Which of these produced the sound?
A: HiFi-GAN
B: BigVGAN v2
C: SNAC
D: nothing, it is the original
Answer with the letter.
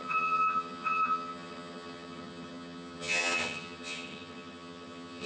A